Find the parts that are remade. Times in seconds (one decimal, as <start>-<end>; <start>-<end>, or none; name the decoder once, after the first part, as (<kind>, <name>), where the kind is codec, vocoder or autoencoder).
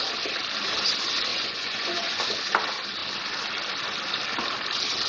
1.3-2.2 (vocoder, Vocos)